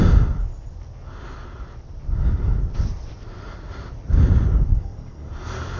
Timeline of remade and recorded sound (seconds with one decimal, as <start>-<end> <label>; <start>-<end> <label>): 0.0-4.7 recorded; 4.7-5.3 remade; 5.3-5.8 recorded

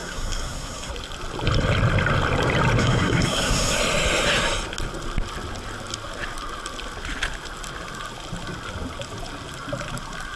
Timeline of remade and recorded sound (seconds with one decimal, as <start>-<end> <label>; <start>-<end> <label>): 0.0-0.9 remade; 0.9-2.8 recorded; 2.8-3.8 remade; 3.8-10.4 recorded

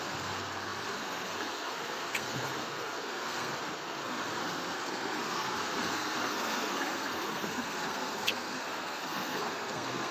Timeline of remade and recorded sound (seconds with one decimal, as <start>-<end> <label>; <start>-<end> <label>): 0.0-10.1 remade

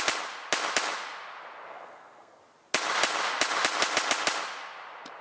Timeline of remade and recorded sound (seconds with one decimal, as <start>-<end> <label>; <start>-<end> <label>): 0.0-1.7 recorded; 1.7-2.4 remade; 2.4-5.2 recorded

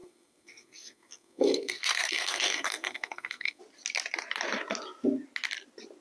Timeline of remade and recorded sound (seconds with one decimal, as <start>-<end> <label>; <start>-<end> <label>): 0.0-3.6 remade; 3.6-6.0 recorded